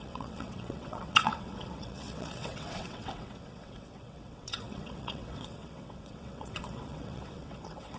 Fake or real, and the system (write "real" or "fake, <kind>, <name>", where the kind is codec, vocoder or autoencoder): fake, vocoder, WaveNeXt